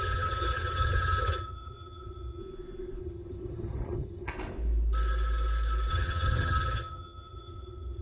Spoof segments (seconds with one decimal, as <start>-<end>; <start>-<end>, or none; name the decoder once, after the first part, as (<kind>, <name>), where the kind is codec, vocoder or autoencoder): 0.0-2.4 (vocoder, HiFi-GAN); 3.0-4.3; 5.9-8.0